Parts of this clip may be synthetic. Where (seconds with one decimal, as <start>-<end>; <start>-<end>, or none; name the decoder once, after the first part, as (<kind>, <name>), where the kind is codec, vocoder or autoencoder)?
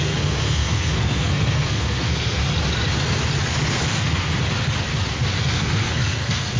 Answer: 0.0-2.4 (codec, SNAC); 3.8-4.3; 5.4-6.6